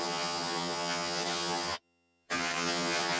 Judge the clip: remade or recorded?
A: remade